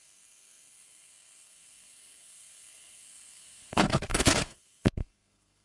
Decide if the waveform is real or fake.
fake